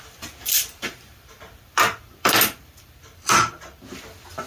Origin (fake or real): fake